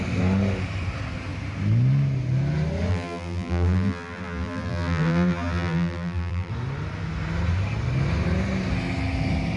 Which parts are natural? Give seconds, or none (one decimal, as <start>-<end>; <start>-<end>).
0.0-2.9; 6.5-9.6

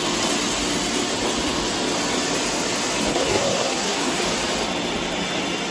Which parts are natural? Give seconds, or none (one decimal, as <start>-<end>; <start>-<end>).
0.0-3.1; 4.2-5.7

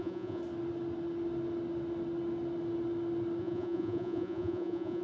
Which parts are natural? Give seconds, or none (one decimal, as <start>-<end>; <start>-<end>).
0.4-3.4

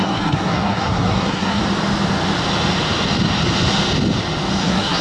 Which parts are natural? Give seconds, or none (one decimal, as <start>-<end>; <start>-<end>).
1.6-4.6

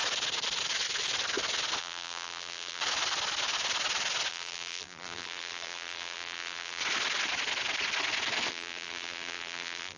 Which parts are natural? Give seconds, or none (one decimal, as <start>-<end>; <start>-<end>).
0.0-1.8; 2.8-4.3; 6.8-8.5

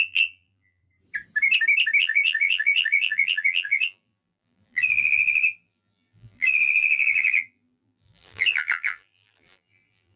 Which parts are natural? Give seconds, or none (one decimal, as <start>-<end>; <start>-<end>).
0.8-2.0